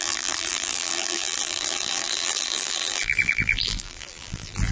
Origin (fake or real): fake